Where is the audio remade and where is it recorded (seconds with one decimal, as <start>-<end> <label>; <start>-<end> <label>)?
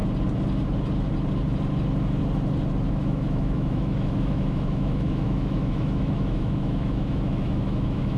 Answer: 0.0-2.9 recorded; 2.9-8.2 remade